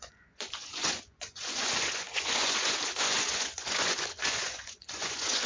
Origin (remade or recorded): remade